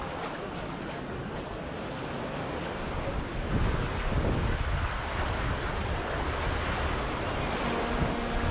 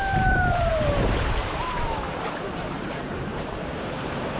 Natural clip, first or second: first